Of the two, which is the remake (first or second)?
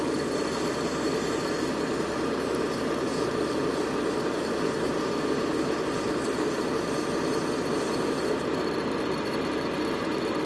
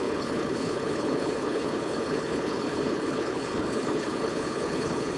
second